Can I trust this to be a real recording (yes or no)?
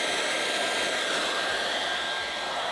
yes